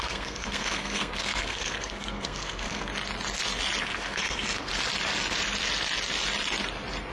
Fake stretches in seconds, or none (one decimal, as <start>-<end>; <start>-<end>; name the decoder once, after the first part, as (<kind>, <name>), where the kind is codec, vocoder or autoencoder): 0.0-2.9 (codec, SNAC); 3.8-4.7